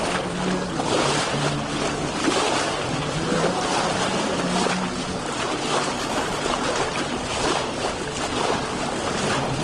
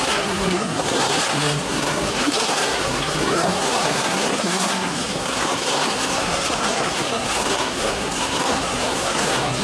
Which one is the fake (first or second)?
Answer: second